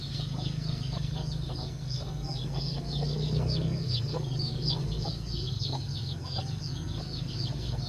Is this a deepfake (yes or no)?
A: yes